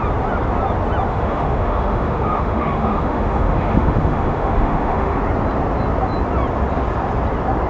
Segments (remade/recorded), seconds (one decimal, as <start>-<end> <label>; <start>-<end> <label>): 0.0-1.1 recorded; 1.1-5.2 remade; 5.2-7.7 recorded